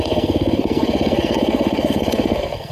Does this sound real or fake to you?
fake